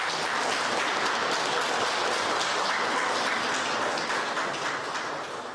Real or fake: real